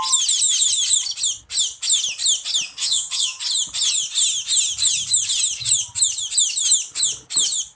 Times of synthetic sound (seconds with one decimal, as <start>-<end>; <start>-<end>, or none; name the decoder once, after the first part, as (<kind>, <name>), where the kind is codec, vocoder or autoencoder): 2.8-3.4 (vocoder, HiFi-GAN)